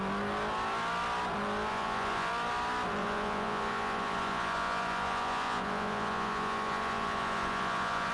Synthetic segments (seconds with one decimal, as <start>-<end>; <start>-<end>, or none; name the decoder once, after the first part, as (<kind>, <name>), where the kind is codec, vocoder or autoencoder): 1.7-2.3 (vocoder, Vocos); 3.0-8.1